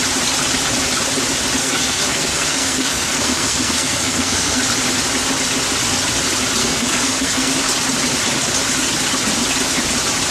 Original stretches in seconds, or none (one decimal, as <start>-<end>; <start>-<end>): 0.0-1.6; 4.6-6.6; 7.5-10.3